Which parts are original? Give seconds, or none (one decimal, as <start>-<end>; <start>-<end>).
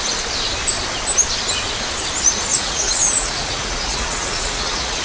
0.0-2.5